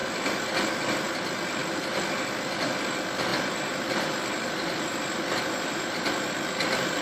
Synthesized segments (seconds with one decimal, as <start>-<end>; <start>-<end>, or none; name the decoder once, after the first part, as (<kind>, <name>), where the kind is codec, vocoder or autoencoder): 1.6-2.2 (vocoder, BigVGAN v2); 3.3-6.3